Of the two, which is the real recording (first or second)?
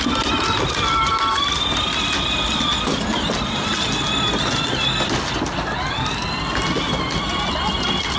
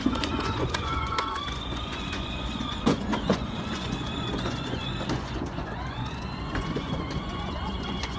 first